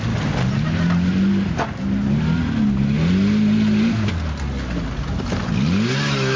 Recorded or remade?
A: recorded